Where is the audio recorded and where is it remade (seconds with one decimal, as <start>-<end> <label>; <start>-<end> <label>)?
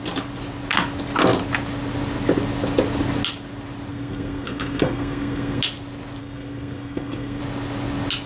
0.0-3.9 recorded; 3.9-5.6 remade; 5.6-6.2 recorded; 6.2-7.4 remade; 7.4-8.3 recorded